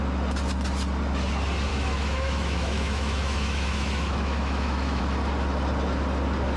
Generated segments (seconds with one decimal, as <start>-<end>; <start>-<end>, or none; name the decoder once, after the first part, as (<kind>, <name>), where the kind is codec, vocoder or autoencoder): 1.7-5.0 (autoencoder, DAC-VAE)